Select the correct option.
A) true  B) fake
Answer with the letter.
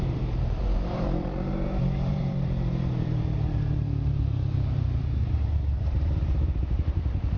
B